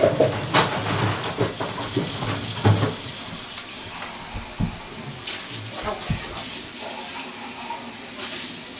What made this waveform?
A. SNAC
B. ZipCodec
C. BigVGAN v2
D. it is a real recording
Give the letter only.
D